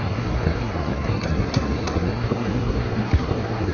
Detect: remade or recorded remade